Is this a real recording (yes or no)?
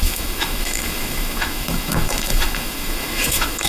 no